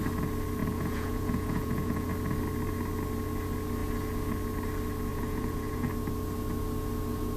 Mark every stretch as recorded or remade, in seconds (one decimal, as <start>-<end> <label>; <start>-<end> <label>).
0.0-0.6 recorded; 0.6-2.1 remade; 2.1-5.1 recorded; 5.1-5.9 remade; 5.9-7.4 recorded